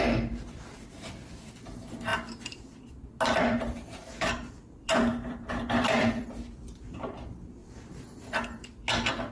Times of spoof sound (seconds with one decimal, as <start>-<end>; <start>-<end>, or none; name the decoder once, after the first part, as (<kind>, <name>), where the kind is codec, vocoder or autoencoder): 0.0-9.3 (vocoder, BigVGAN v2)